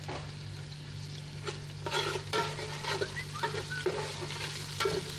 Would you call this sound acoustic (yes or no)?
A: yes